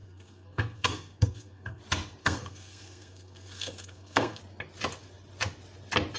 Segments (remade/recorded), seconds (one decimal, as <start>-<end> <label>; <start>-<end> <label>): 0.0-1.8 remade; 1.8-2.2 recorded; 2.2-4.4 remade; 4.4-6.2 recorded